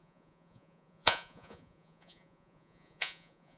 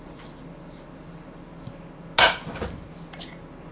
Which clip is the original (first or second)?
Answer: second